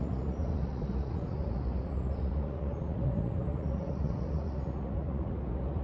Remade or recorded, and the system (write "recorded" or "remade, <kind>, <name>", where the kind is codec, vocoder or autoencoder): remade, vocoder, Vocos